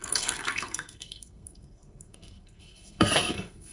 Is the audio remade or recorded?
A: remade